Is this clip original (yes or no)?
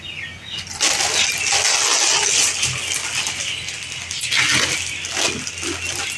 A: yes